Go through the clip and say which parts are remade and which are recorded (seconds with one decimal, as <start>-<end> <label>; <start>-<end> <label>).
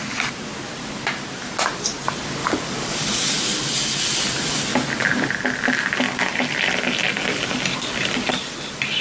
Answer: 0.0-2.4 recorded; 2.4-3.3 remade; 3.3-9.0 recorded